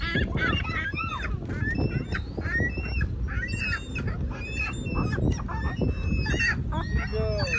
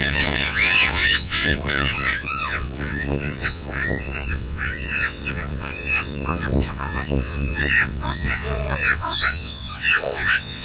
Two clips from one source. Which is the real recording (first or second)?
first